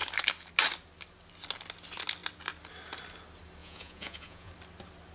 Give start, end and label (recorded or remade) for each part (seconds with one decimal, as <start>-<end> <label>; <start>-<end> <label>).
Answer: 0.0-3.6 recorded; 3.6-4.5 remade; 4.5-5.1 recorded